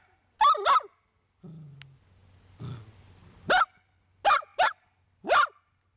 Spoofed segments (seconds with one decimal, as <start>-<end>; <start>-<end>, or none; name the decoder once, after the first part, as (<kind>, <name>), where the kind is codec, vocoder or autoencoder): none

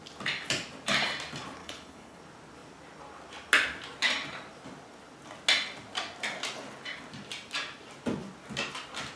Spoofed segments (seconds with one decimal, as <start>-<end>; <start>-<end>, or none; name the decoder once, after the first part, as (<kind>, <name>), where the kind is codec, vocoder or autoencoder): 1.6-2.2 (codec, HILCodec)

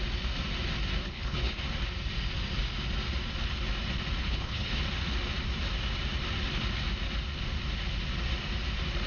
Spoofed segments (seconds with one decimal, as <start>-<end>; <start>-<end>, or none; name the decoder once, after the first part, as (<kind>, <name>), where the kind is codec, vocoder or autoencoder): 1.0-1.6 (codec, HILCodec); 4.2-4.8

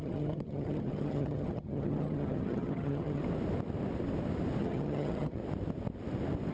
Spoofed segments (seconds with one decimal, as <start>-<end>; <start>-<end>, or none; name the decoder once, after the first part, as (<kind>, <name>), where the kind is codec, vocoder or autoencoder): 0.0-3.2 (vocoder, HiFi-GAN); 4.6-5.4